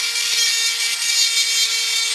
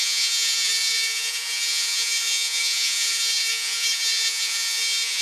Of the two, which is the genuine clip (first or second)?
first